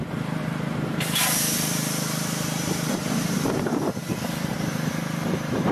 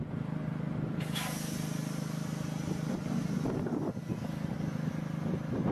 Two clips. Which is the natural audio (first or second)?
second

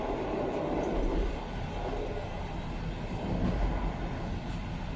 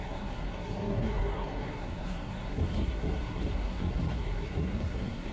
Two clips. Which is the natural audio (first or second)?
first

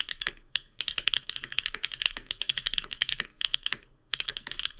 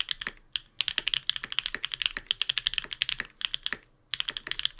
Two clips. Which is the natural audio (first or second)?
second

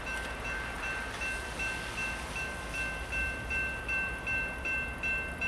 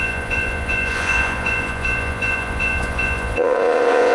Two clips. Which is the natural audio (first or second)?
first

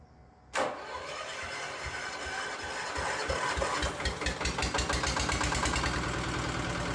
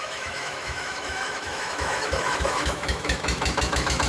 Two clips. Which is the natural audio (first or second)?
first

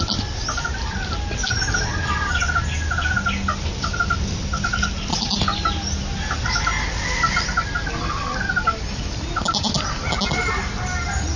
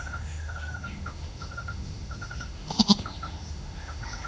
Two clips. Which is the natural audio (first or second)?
first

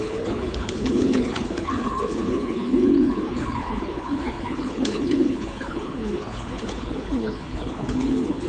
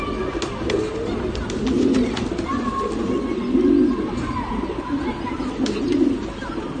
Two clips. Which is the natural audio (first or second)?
second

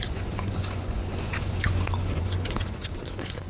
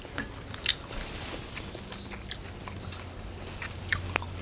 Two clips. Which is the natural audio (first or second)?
second